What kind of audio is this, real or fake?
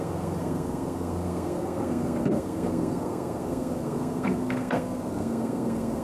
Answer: fake